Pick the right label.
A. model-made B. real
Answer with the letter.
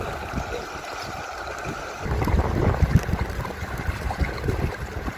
B